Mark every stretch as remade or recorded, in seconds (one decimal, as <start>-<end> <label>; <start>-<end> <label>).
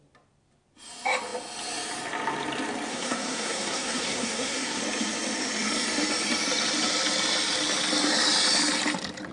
0.0-2.9 recorded; 2.9-4.8 remade; 4.8-9.3 recorded